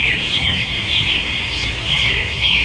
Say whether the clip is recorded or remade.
remade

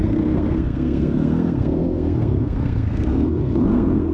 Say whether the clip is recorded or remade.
remade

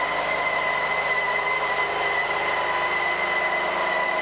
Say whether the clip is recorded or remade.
recorded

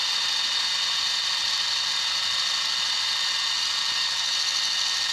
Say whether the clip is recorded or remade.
recorded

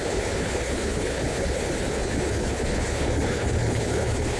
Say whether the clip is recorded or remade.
remade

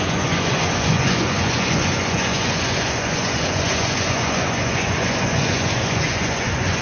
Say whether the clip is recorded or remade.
remade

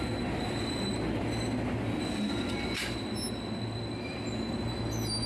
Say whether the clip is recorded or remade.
recorded